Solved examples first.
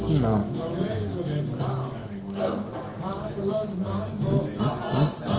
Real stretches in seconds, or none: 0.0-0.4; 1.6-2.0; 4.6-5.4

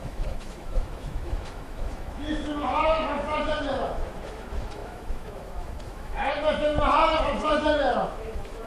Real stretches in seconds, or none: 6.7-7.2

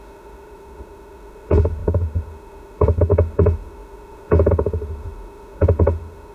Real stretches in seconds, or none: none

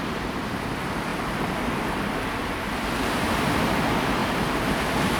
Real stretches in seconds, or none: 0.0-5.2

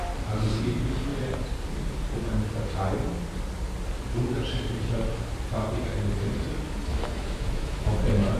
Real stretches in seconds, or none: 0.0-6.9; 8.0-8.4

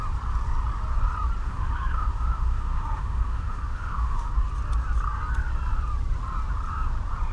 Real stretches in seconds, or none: 0.0-1.4; 4.3-7.3